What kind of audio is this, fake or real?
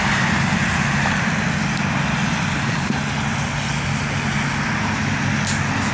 real